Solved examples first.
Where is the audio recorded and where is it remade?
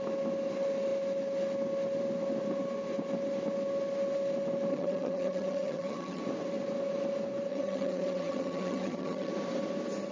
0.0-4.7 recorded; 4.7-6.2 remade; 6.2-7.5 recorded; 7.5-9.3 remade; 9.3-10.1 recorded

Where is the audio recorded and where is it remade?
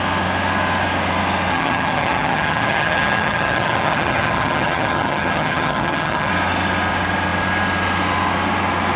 0.0-1.5 recorded; 1.5-6.3 remade; 6.3-9.0 recorded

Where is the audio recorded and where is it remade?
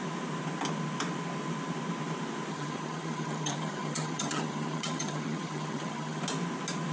0.0-2.5 recorded; 2.5-6.2 remade; 6.2-6.9 recorded